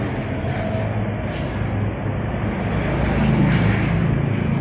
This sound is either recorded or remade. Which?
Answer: recorded